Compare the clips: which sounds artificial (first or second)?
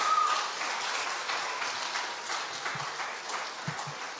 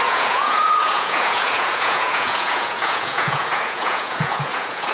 second